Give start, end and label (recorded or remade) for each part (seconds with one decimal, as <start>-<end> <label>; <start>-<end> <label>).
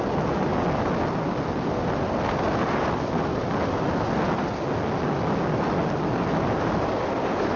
0.0-7.6 recorded